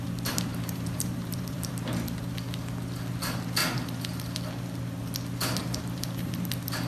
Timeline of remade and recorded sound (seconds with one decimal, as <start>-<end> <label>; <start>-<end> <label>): 0.0-0.5 recorded; 0.5-1.7 remade; 1.7-5.6 recorded; 5.6-6.3 remade; 6.3-6.9 recorded